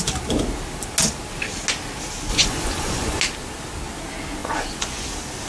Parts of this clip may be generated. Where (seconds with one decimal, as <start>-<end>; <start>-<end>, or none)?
2.3-3.2; 4.4-5.1